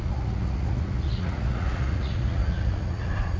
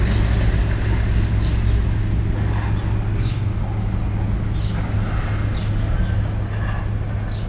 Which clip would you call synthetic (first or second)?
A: first